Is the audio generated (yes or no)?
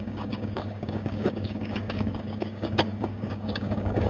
yes